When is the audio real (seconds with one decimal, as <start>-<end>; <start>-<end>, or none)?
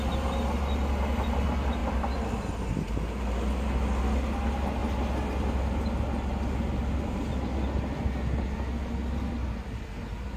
0.0-10.4